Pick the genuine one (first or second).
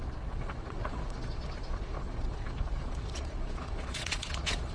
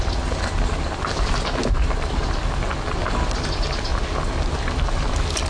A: second